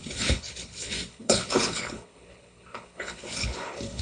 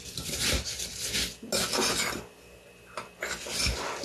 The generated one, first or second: first